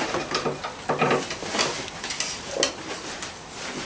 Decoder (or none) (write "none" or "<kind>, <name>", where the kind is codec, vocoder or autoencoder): none